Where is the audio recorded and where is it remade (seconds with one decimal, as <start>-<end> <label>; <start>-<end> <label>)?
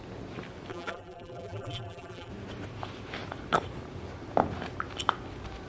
0.0-0.7 recorded; 0.7-2.3 remade; 2.3-5.7 recorded